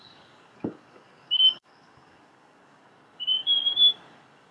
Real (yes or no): no